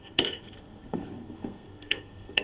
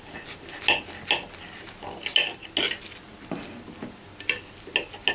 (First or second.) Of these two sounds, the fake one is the first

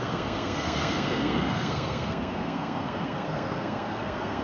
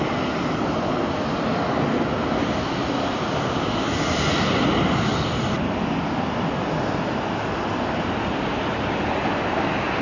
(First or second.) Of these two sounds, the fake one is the first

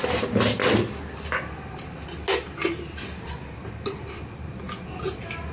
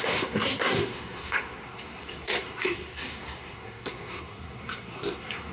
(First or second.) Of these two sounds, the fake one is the second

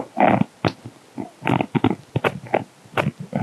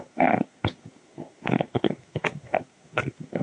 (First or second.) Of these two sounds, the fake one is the second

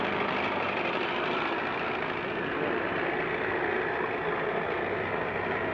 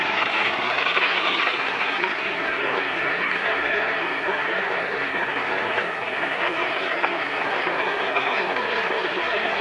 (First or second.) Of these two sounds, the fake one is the second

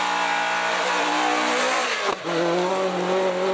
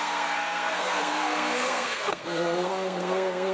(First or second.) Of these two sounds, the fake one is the second